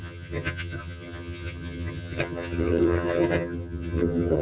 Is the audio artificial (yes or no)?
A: yes